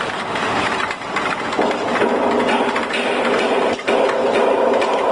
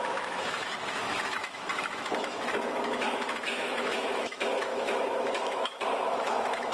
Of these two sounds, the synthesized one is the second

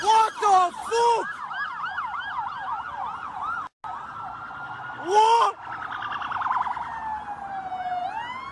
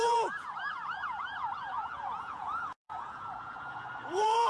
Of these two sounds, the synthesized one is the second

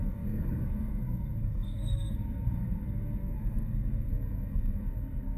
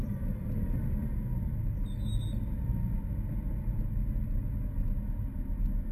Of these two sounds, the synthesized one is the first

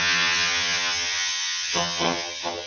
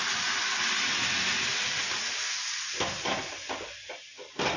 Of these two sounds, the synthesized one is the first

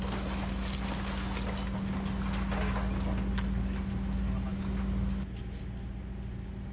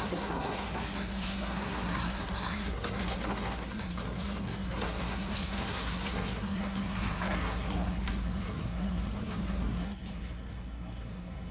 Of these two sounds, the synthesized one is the second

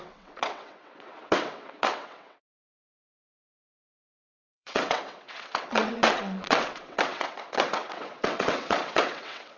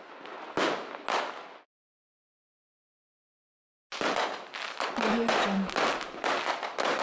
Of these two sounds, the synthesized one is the first